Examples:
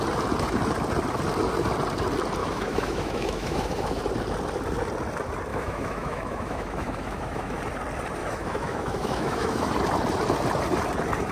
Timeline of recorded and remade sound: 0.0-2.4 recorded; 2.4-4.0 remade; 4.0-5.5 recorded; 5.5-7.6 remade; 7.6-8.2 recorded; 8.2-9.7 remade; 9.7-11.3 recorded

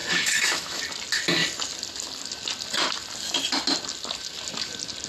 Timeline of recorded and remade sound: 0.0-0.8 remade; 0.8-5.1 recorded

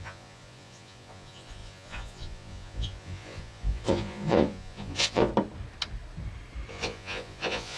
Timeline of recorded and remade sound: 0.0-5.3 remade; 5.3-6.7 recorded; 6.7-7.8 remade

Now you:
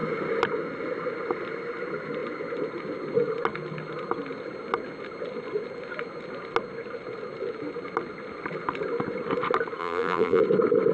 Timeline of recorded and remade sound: 0.0-9.8 recorded; 9.8-10.4 remade; 10.4-10.9 recorded